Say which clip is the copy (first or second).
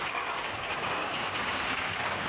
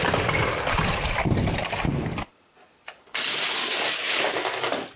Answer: first